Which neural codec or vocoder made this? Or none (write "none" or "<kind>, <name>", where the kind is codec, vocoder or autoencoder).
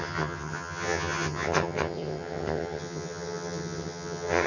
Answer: vocoder, HiFi-GAN